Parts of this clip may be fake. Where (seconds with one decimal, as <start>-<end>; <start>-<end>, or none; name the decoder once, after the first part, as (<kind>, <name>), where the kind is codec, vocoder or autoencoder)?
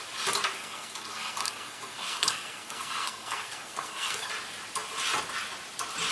0.6-4.3 (codec, SNAC)